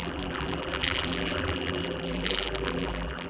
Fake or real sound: fake